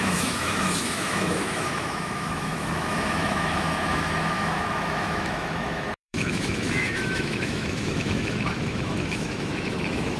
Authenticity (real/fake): fake